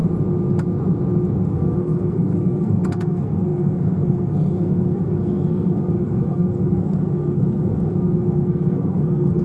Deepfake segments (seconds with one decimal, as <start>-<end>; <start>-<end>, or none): 1.3-9.4